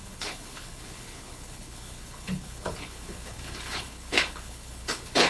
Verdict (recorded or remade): remade